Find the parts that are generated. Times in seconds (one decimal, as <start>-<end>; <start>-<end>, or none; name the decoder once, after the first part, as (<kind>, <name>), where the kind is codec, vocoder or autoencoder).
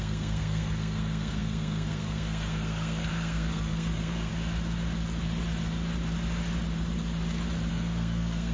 0.0-4.3 (codec, SNAC); 7.7-8.5